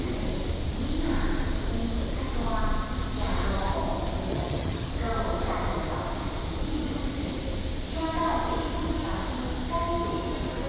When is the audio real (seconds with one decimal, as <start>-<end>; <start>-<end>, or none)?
0.0-4.3; 4.9-10.7